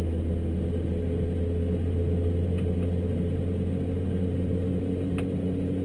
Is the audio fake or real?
real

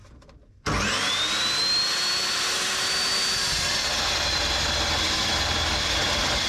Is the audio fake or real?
real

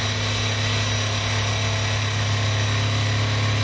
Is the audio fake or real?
real